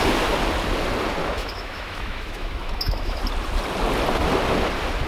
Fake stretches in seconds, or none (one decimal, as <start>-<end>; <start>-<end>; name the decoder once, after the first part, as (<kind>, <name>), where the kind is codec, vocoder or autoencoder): 1.2-3.2 (autoencoder, DAC-VAE)